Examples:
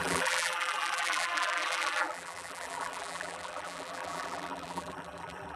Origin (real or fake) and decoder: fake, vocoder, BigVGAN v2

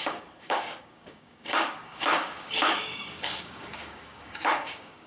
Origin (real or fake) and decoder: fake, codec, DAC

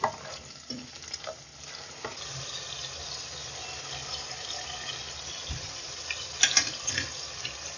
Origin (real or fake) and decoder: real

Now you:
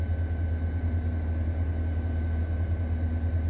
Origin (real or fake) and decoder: real